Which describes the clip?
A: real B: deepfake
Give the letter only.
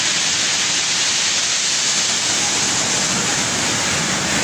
A